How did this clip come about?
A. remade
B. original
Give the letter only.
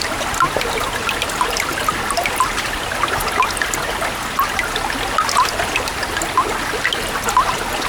B